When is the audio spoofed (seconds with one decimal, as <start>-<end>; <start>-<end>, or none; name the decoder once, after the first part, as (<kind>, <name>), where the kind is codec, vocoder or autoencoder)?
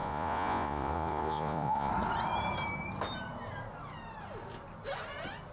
0.0-1.9 (vocoder, Vocos)